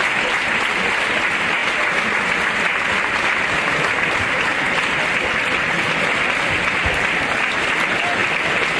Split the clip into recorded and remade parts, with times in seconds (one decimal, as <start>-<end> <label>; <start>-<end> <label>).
0.0-8.2 recorded; 8.2-8.8 remade